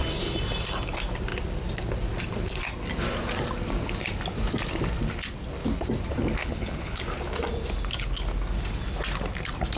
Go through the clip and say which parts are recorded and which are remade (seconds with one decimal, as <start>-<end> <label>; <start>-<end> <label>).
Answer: 0.0-6.4 recorded; 6.4-7.0 remade; 7.0-9.8 recorded